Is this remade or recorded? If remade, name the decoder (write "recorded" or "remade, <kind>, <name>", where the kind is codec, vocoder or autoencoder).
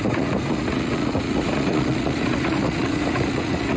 remade, vocoder, Vocos